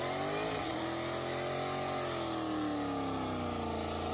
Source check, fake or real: real